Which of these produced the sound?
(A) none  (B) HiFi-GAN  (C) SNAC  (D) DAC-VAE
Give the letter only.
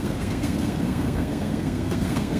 C